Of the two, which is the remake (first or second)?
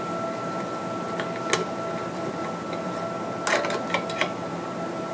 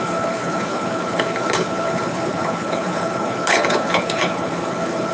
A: second